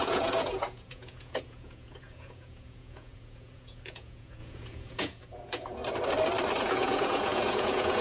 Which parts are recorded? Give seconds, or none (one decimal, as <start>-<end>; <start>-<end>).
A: 5.8-6.6